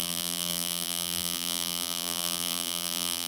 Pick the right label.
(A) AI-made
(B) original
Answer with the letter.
A